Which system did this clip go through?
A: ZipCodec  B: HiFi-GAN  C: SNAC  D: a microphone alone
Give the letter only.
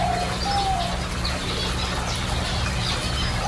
D